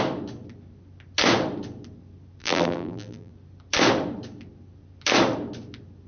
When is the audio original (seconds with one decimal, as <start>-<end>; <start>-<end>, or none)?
0.0-2.4; 3.3-6.1